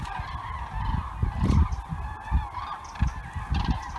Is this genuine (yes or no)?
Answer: yes